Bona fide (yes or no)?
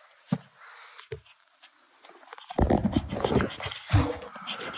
yes